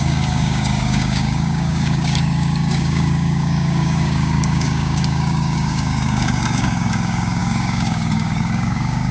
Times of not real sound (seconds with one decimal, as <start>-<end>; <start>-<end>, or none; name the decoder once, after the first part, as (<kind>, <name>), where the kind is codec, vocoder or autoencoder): 0.0-9.1 (codec, DAC)